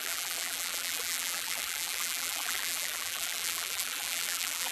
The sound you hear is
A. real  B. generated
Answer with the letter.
B